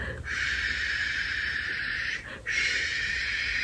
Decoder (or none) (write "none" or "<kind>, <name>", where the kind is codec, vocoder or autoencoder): vocoder, BigVGAN v2